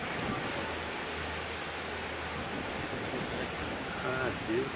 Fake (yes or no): no